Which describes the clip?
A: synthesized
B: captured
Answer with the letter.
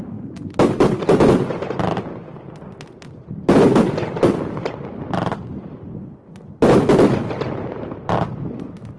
B